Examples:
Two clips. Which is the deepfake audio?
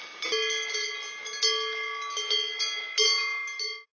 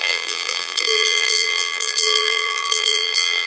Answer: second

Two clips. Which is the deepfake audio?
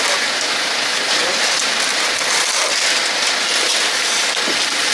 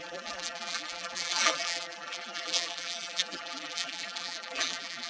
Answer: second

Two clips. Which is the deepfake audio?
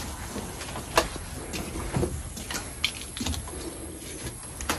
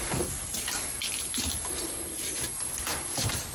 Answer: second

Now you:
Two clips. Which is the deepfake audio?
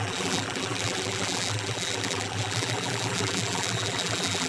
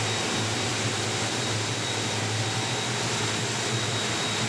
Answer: first